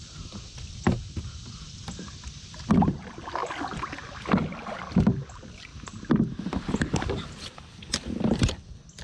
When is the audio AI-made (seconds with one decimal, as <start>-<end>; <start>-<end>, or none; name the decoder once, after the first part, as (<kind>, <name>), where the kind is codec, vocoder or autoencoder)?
none